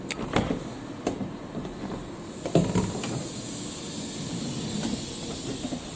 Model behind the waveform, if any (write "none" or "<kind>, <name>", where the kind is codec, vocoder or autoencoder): none